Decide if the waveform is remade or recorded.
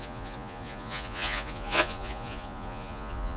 remade